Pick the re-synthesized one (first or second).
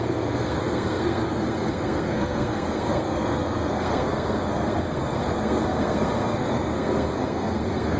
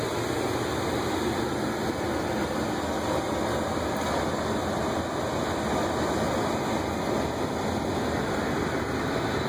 first